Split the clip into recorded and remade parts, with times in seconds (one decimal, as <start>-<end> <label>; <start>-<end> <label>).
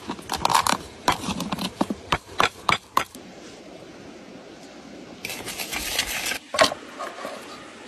0.0-0.5 recorded; 0.5-3.6 remade; 3.6-7.9 recorded